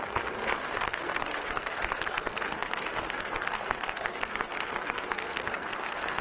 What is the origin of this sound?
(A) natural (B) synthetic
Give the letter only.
B